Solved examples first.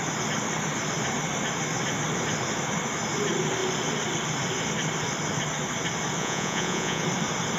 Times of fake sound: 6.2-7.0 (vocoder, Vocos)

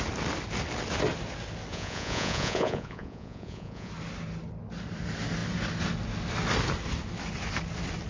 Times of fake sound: 1.7-3.9 (vocoder, Vocos)